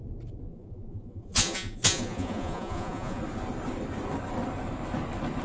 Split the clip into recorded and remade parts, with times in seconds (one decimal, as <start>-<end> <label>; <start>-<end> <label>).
0.0-0.5 recorded; 0.5-3.2 remade; 3.2-5.4 recorded